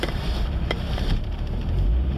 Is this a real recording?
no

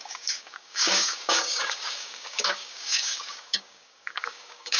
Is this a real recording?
no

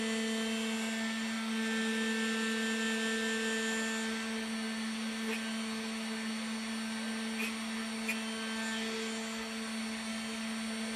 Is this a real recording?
yes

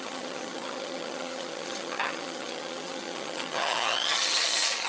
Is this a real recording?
no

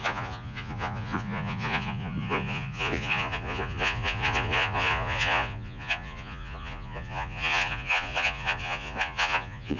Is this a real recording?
no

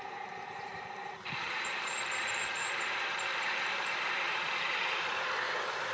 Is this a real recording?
no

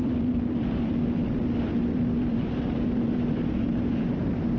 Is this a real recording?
no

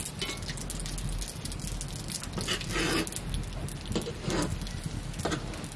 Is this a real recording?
yes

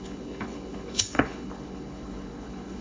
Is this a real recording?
no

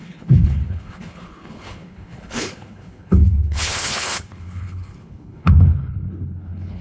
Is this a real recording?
no